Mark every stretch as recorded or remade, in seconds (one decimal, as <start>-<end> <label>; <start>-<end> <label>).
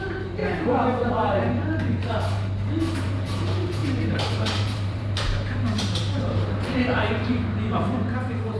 0.0-8.6 remade